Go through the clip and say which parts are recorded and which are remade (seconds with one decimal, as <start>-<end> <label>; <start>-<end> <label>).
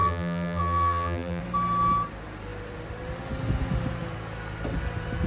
0.0-1.4 remade; 1.4-5.3 recorded